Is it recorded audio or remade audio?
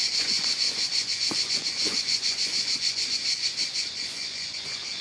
remade